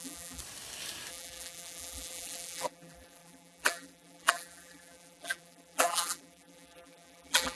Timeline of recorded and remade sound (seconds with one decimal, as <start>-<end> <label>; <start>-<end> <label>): 0.0-0.4 remade; 0.4-1.1 recorded; 1.1-7.6 remade